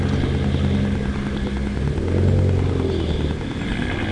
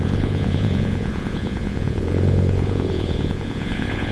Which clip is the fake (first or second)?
second